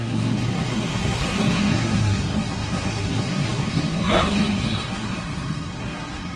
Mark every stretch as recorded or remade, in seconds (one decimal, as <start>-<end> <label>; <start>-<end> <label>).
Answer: 0.0-6.4 remade